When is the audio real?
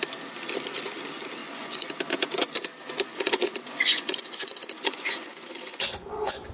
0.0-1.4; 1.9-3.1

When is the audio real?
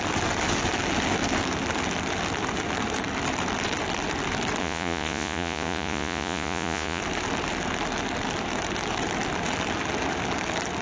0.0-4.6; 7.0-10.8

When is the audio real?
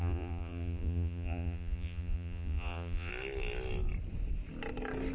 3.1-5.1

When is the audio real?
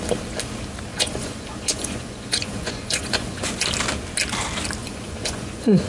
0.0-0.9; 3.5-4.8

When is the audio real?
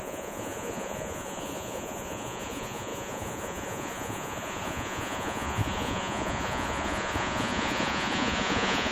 none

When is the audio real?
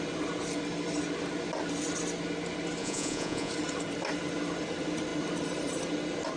0.0-2.8; 3.5-6.4